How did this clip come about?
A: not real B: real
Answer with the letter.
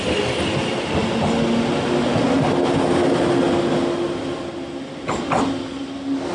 B